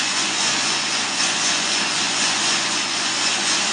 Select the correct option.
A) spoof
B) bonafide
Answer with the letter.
A